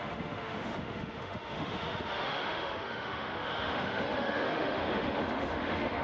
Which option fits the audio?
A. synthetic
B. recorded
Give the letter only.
A